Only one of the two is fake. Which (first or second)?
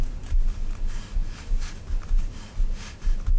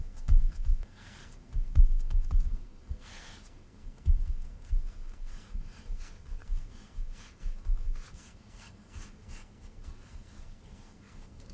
second